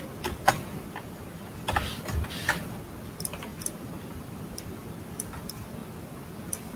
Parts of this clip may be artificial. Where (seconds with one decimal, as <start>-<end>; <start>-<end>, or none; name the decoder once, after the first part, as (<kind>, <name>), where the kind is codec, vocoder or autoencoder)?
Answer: 0.5-2.8 (vocoder, BigVGAN v2); 3.5-4.9